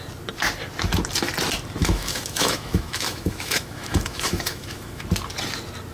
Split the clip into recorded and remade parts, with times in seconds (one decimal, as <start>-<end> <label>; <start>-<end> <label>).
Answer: 0.0-1.8 recorded; 1.8-5.0 remade; 5.0-5.9 recorded